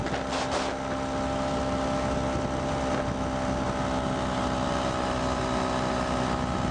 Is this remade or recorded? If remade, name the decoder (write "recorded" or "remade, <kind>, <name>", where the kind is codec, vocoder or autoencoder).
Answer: recorded